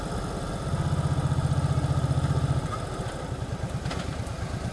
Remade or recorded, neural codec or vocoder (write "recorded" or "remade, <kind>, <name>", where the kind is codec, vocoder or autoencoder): recorded